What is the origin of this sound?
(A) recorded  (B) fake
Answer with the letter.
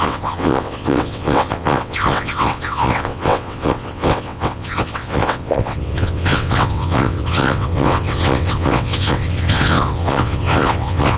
B